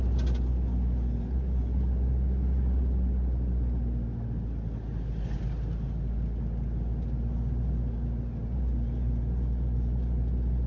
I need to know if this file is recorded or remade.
recorded